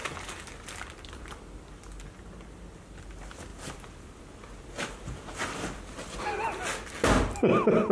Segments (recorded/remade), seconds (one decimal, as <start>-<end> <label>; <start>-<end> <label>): 0.0-7.9 recorded